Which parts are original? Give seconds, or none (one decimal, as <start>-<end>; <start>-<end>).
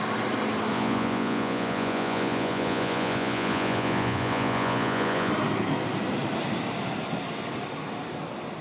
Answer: 0.0-0.7; 5.3-8.6